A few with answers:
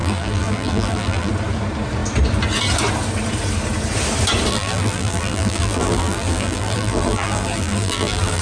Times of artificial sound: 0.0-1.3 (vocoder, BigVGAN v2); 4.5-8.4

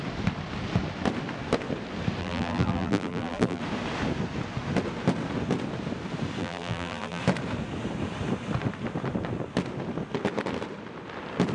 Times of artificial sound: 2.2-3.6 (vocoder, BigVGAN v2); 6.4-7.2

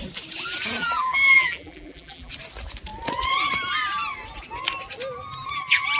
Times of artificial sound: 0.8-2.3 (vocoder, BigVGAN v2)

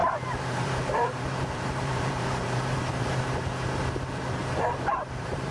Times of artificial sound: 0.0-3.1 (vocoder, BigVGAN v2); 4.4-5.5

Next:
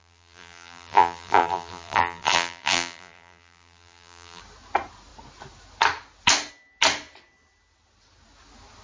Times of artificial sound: 0.0-4.4 (vocoder, BigVGAN v2)